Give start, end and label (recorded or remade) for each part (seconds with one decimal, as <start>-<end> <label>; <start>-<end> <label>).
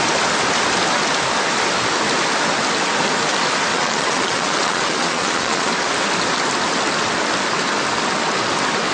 0.0-3.7 recorded; 3.7-5.7 remade; 5.7-8.9 recorded